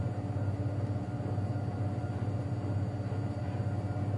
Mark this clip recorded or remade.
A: recorded